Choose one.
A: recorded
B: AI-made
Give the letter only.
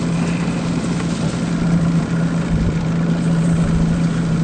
A